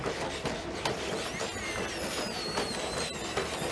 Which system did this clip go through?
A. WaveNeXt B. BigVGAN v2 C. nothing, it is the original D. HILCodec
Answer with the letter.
C